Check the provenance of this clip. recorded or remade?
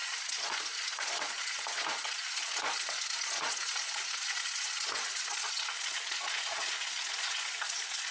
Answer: remade